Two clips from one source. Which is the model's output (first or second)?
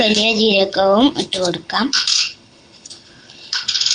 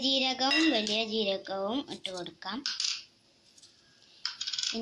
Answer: first